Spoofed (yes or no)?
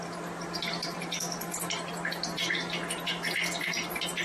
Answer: no